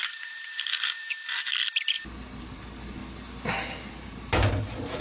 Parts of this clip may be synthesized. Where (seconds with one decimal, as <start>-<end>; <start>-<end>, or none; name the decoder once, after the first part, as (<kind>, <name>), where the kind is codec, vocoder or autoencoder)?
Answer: 0.0-1.2 (vocoder, BigVGAN v2); 2.4-3.0; 3.9-5.0